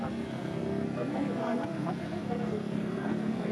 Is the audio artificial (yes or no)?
yes